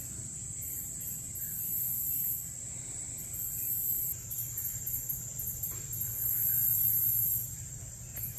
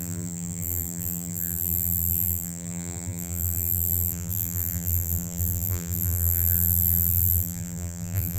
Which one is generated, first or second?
second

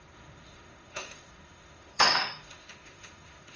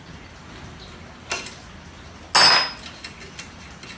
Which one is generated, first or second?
first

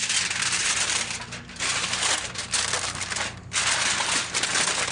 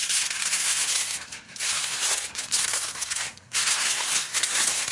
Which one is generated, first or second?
second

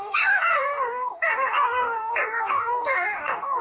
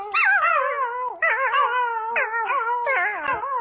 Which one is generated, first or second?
first